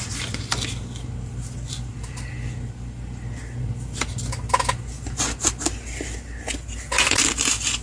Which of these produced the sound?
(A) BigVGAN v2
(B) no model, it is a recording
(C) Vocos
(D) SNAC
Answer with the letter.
B